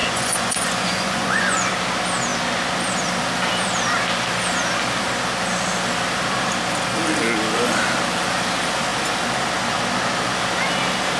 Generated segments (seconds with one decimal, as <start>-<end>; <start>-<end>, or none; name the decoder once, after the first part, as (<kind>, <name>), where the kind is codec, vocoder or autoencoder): 0.0-1.7 (vocoder, Vocos)